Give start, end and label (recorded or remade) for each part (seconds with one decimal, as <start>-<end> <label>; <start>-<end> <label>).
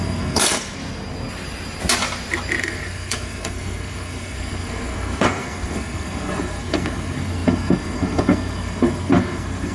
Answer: 0.0-0.8 remade; 0.8-2.6 recorded; 2.6-9.7 remade